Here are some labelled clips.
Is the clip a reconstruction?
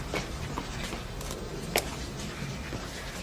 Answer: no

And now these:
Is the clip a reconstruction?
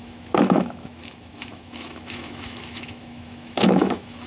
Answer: yes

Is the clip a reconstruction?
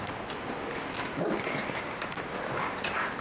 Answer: no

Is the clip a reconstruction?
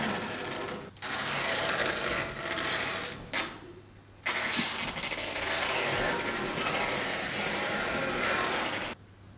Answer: no